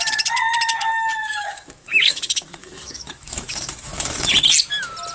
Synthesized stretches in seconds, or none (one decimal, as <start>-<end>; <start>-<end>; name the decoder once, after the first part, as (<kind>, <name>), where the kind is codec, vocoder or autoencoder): 1.2-4.3 (autoencoder, DAC-VAE)